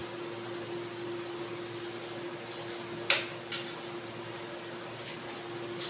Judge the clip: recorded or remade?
recorded